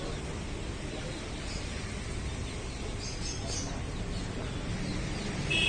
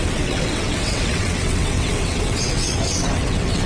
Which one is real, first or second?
first